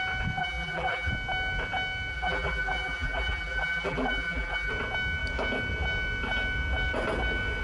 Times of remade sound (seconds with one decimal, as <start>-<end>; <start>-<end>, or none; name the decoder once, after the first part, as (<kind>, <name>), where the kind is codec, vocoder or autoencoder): 0.4-1.1 (vocoder, BigVGAN v2); 2.1-4.7